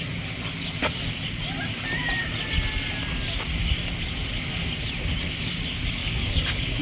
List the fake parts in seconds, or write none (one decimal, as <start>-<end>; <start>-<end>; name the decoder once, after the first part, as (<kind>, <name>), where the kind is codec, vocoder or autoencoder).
6.0-6.8 (codec, DAC)